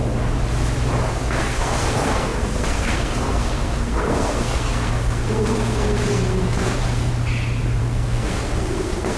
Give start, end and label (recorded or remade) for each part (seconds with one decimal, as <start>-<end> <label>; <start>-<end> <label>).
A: 0.0-1.0 recorded; 1.0-7.1 remade; 7.1-7.8 recorded; 7.8-9.2 remade